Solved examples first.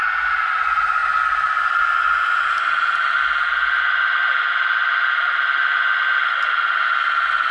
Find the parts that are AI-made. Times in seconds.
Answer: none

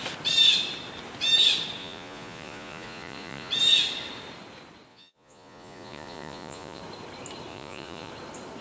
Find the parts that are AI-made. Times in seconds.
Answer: 1.8-3.5 (vocoder, Vocos); 4.9-6.8; 7.5-8.1

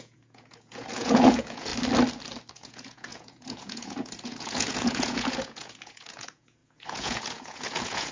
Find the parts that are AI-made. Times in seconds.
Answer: 0.0-1.7 (vocoder, Vocos); 2.5-8.1

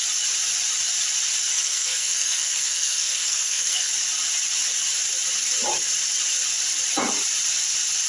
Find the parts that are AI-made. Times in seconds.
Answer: 1.5-3.9 (codec, SNAC)

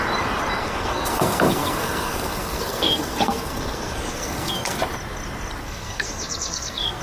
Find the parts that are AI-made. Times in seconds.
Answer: 0.6-4.8 (codec, SNAC); 5.6-7.0

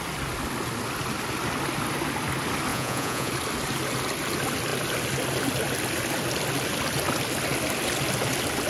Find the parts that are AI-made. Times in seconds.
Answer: 2.7-3.3 (vocoder, Vocos)

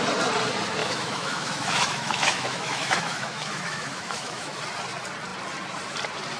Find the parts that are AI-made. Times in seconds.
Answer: 0.8-4.6 (autoencoder, DAC-VAE)

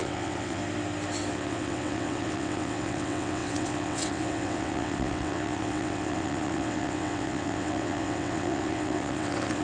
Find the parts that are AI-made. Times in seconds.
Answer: 0.0-0.6 (vocoder, WaveNeXt); 1.3-9.6